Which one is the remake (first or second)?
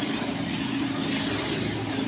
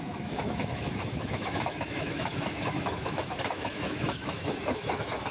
second